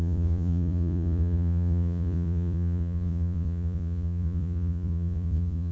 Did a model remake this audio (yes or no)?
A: yes